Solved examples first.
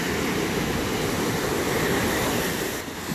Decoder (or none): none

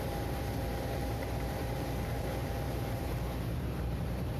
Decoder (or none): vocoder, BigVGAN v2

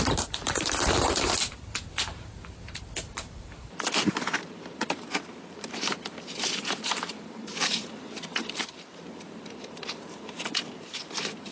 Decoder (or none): vocoder, BigVGAN v2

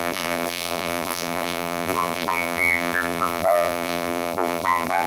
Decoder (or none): vocoder, BigVGAN v2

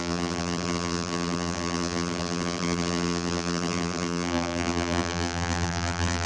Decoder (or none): vocoder, BigVGAN v2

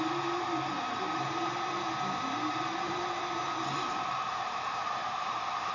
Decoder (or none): vocoder, BigVGAN v2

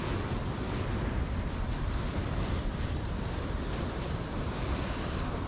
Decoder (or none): vocoder, BigVGAN v2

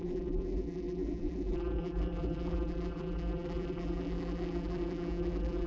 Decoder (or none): vocoder, BigVGAN v2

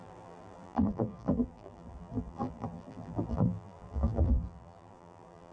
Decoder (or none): vocoder, BigVGAN v2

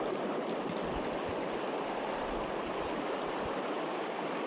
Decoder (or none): none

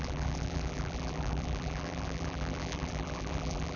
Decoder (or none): vocoder, BigVGAN v2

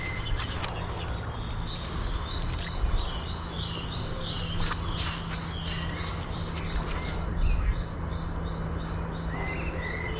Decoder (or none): none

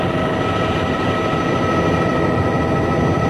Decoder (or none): none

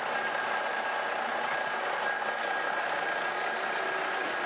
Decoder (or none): none